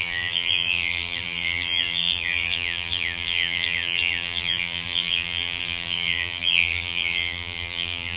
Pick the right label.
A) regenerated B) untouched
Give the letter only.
A